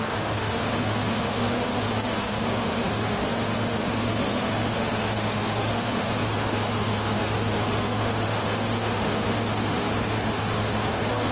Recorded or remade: remade